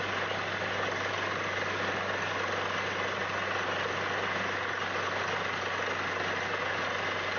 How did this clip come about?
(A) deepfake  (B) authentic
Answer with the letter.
B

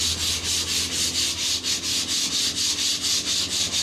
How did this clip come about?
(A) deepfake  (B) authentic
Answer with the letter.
B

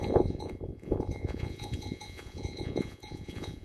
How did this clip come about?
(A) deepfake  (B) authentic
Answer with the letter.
A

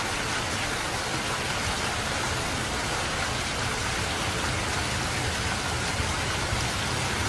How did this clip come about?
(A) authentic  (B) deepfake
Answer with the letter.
A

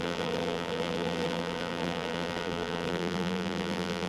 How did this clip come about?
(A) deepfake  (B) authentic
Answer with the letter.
A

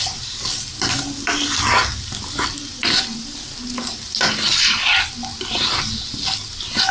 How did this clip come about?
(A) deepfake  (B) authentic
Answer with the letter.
B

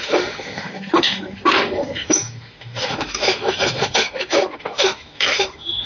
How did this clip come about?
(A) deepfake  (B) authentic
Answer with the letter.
A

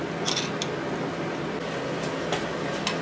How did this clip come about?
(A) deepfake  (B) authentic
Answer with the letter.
B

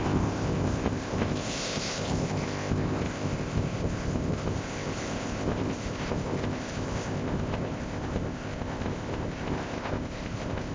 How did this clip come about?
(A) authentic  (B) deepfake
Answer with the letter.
B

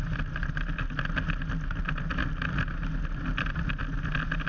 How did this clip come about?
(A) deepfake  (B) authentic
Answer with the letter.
B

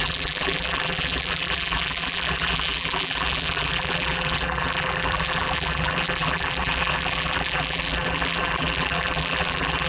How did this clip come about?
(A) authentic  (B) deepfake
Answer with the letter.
B